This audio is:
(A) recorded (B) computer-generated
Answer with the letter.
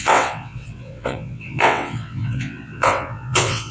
B